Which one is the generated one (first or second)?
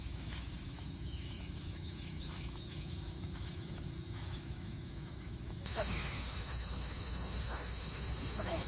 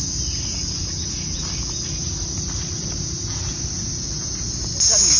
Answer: first